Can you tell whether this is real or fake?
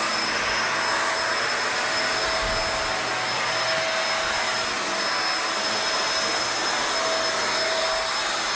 real